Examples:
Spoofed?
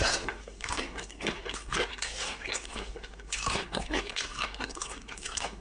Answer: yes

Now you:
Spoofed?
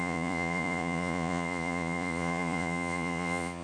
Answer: yes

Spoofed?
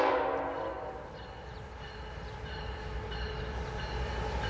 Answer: no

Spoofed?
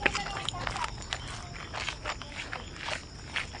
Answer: no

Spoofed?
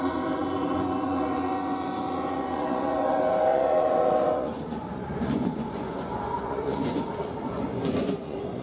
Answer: yes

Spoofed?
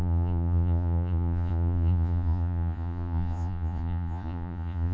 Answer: yes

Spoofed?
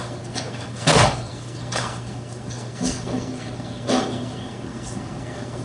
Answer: yes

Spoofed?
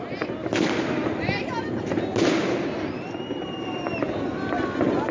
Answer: no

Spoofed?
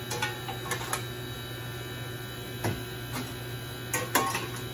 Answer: no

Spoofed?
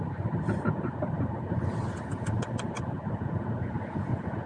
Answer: no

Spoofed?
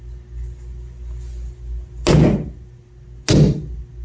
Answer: no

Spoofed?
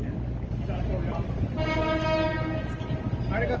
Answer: no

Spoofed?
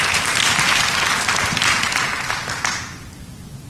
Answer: no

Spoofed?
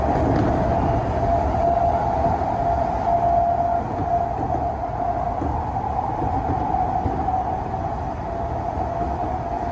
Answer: no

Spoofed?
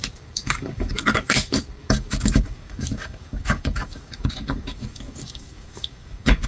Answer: yes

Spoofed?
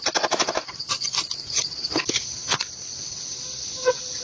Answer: yes